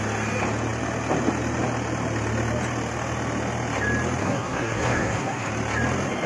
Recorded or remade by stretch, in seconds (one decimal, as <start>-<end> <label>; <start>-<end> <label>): 0.0-4.2 recorded; 4.2-5.5 remade; 5.5-6.3 recorded